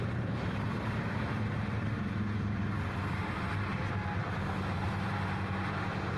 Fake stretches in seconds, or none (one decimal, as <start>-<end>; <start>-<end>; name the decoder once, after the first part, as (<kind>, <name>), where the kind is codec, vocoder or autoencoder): 0.0-4.2 (vocoder, BigVGAN v2); 4.8-6.2